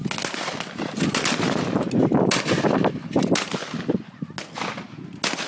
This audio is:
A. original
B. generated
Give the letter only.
A